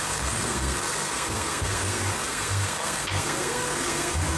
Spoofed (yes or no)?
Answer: yes